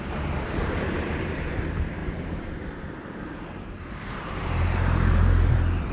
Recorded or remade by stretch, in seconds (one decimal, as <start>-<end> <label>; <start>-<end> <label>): 0.0-5.9 remade